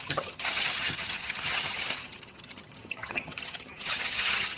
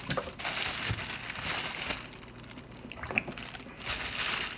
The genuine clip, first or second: second